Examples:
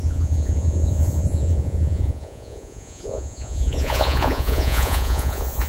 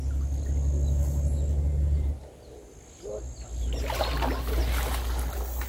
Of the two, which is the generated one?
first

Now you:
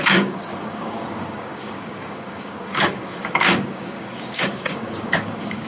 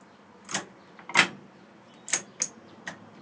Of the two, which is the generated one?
first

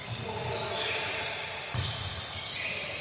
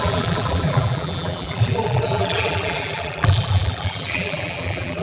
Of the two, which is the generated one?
second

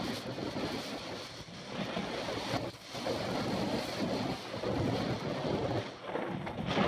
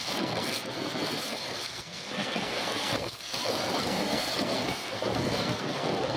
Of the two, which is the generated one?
second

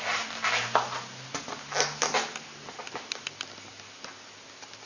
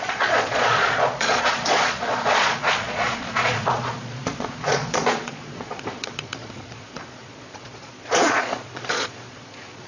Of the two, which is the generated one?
second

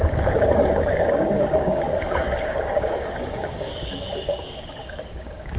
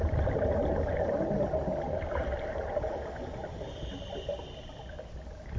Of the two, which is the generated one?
first